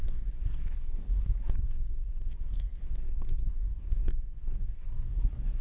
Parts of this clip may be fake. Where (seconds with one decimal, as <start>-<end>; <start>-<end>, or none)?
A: 0.0-5.6